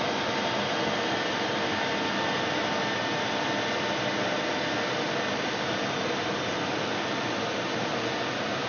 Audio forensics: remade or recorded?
recorded